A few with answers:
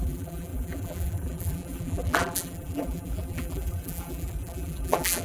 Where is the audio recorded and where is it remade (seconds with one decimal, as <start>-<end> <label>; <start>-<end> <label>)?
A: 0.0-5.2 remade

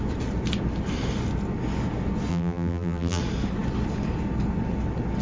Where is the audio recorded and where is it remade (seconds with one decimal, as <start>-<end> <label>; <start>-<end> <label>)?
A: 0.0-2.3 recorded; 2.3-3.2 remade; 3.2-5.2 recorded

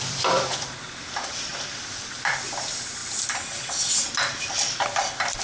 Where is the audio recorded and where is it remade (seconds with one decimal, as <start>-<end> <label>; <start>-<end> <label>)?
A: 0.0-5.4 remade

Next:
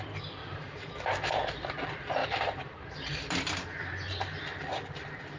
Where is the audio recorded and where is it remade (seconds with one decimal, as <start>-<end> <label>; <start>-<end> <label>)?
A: 0.0-0.4 recorded; 0.4-0.9 remade; 0.9-2.2 recorded; 2.2-2.8 remade; 2.8-5.4 recorded